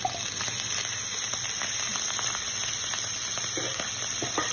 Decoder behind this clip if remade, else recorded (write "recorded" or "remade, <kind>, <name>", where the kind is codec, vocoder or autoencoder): recorded